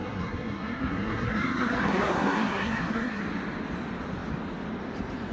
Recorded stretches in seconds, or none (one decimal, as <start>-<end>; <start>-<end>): 3.2-5.3